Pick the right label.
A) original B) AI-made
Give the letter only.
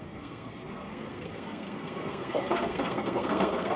B